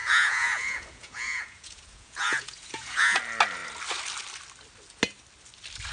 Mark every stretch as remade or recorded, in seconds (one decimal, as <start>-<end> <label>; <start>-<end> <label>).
0.0-3.2 remade; 3.2-5.9 recorded